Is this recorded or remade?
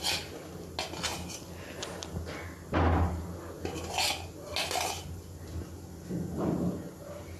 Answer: recorded